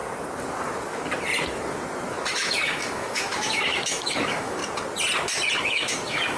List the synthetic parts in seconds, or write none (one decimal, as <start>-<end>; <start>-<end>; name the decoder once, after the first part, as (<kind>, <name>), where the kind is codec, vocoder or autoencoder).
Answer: 2.3-4.6 (autoencoder, DAC-VAE); 5.6-6.4